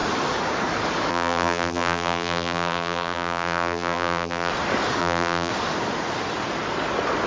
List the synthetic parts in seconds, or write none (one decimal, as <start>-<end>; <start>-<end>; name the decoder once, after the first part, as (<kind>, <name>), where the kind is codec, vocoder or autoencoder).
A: 1.1-4.5 (vocoder, BigVGAN v2); 5.0-5.5